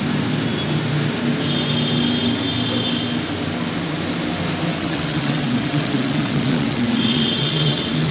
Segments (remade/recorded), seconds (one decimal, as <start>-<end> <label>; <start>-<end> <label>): 0.0-4.7 recorded; 4.7-8.1 remade